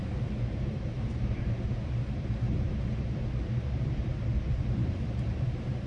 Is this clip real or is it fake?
fake